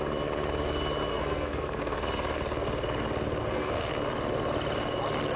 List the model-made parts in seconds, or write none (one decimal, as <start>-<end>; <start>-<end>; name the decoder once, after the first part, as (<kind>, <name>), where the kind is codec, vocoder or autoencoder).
1.1-1.8 (codec, SNAC); 3.4-3.9